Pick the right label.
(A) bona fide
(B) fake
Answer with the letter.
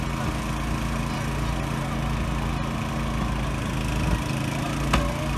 A